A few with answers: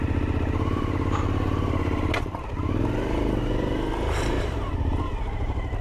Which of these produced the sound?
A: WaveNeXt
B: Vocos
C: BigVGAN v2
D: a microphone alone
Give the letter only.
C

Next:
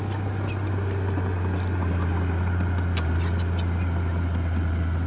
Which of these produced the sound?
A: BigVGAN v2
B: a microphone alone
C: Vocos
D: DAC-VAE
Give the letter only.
B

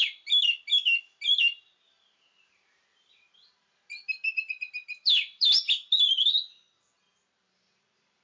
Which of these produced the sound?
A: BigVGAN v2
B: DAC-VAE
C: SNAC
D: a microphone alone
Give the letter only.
A